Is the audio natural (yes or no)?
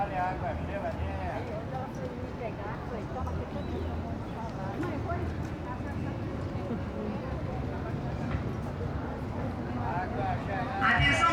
yes